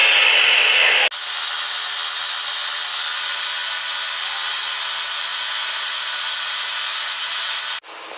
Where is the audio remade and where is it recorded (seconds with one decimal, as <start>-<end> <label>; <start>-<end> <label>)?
0.0-5.3 recorded; 5.3-7.6 remade; 7.6-8.2 recorded